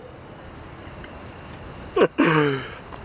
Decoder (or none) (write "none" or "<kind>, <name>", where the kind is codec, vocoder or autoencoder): none